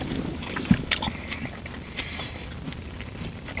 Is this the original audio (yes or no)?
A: yes